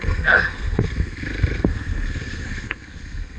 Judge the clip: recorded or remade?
remade